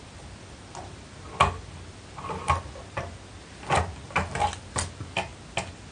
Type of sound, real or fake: real